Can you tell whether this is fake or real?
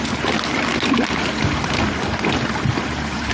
real